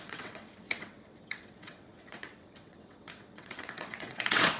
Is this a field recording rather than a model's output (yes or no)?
no